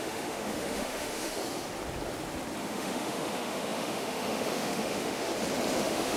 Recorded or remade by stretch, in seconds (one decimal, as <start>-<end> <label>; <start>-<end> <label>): 0.0-1.4 remade; 1.4-2.6 recorded; 2.6-5.3 remade; 5.3-5.8 recorded; 5.8-6.2 remade